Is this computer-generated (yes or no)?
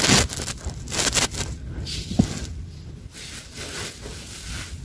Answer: no